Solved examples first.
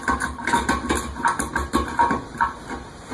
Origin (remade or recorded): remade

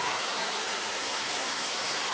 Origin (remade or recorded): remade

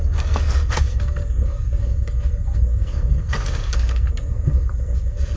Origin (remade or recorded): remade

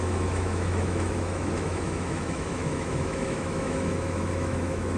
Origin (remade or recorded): remade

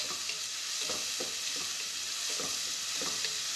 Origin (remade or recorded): recorded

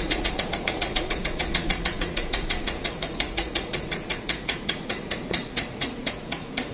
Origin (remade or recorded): remade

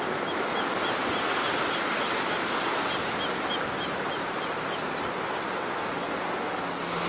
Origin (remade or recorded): recorded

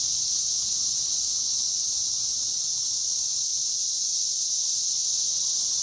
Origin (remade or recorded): recorded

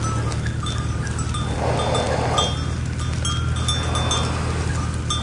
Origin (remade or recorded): recorded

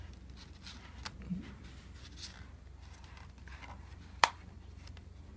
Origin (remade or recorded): recorded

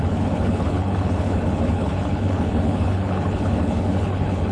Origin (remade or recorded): remade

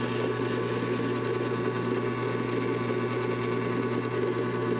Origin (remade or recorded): recorded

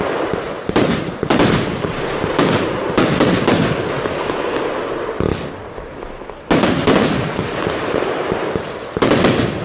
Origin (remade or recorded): recorded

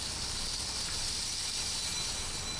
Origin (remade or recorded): recorded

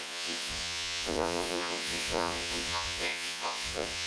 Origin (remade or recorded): remade